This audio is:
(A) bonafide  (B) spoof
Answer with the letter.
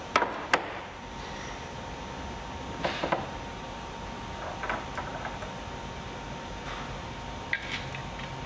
A